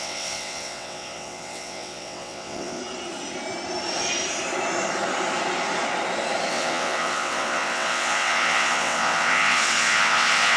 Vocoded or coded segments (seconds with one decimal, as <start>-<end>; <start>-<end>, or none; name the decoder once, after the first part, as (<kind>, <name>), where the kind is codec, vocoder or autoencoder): 0.0-2.8 (vocoder, WaveNeXt); 6.5-10.6